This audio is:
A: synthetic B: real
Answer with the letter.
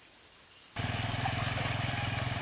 B